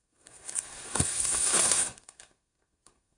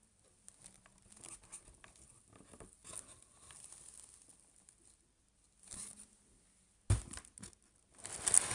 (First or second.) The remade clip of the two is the first